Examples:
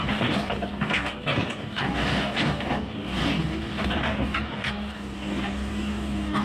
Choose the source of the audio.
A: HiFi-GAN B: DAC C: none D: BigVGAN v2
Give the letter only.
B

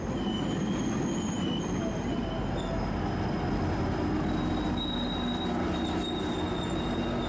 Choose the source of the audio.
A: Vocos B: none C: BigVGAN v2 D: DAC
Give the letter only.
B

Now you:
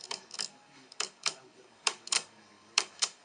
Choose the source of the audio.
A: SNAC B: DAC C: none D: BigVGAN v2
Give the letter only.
B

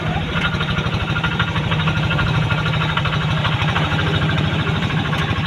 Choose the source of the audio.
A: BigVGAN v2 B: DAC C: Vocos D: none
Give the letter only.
D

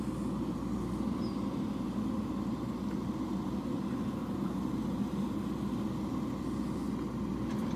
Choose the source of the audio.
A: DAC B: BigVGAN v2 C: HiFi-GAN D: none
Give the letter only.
D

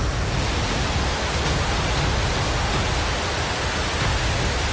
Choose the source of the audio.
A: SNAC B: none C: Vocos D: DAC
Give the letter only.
B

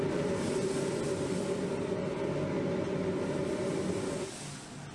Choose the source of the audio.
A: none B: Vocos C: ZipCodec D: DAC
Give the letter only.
A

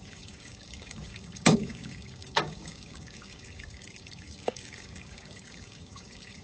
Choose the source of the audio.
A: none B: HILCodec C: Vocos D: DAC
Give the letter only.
D